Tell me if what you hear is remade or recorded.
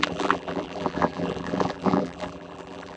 remade